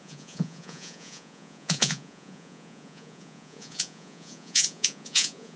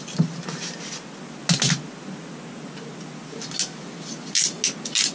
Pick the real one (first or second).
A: second